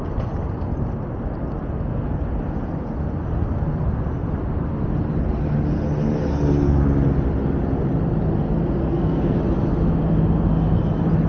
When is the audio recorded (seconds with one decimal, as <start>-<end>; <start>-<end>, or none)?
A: 0.0-8.8; 9.4-11.3